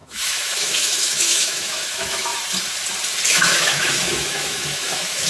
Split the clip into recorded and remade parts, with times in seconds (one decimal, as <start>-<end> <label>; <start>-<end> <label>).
0.0-2.3 remade; 2.3-3.3 recorded; 3.3-5.3 remade